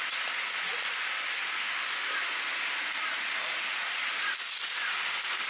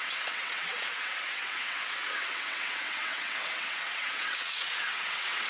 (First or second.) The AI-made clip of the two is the second